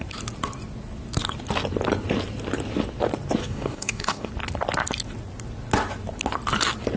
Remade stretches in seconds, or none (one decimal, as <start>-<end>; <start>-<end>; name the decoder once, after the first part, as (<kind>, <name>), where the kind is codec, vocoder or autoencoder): 3.4-4.3 (codec, DAC)